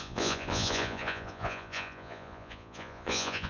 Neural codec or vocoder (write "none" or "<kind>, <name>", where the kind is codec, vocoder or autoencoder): vocoder, Vocos